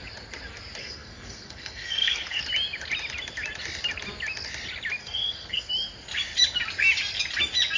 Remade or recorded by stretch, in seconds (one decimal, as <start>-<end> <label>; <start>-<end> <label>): 0.0-0.8 recorded; 0.8-2.4 remade; 2.4-5.0 recorded; 5.0-5.7 remade; 5.7-7.8 recorded